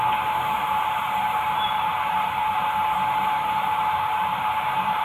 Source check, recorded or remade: remade